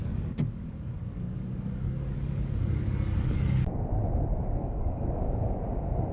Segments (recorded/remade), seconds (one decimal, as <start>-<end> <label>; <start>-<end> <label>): 0.0-2.9 remade; 2.9-4.6 recorded; 4.6-5.5 remade; 5.5-6.1 recorded